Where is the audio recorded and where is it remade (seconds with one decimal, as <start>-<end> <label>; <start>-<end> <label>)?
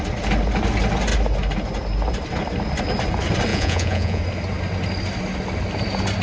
0.0-3.5 recorded; 3.5-4.2 remade; 4.2-6.2 recorded